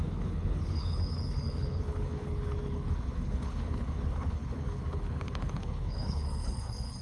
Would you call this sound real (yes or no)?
no